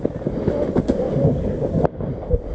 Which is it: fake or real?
real